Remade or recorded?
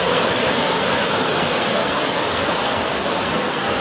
remade